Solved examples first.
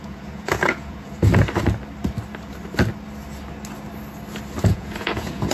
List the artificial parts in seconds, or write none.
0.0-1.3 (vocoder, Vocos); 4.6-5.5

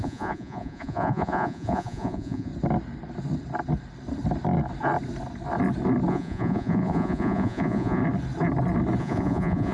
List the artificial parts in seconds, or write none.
0.0-2.5 (vocoder, Vocos); 6.1-8.0; 9.0-9.7

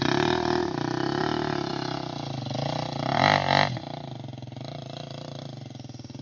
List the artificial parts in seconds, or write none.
none

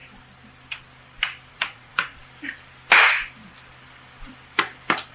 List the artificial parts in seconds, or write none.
1.5-2.2 (vocoder, Vocos)

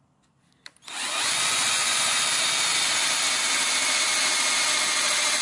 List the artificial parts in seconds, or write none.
1.0-2.2 (vocoder, Vocos)